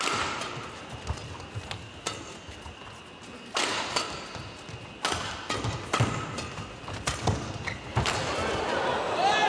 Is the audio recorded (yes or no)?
yes